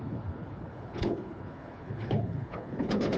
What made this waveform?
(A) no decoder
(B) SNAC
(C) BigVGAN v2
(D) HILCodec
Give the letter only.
D